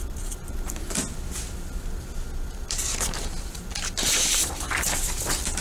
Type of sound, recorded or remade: remade